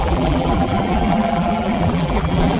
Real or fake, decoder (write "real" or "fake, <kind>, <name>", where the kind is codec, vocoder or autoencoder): fake, vocoder, BigVGAN v2